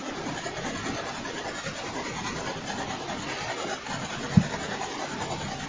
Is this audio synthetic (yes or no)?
no